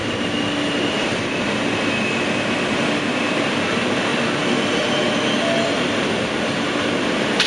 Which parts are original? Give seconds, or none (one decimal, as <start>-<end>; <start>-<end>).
0.0-3.0; 4.1-5.7